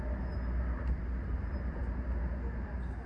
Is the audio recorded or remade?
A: recorded